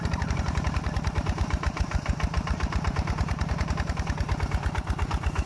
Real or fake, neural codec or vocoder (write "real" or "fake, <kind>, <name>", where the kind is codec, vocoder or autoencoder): fake, vocoder, BigVGAN v2